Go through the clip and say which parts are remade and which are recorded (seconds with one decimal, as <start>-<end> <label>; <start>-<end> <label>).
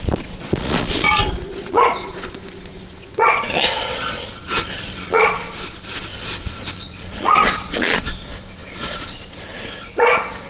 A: 0.0-10.5 remade